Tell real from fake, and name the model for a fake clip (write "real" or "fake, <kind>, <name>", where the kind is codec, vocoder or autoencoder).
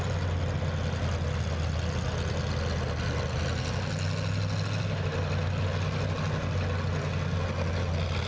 real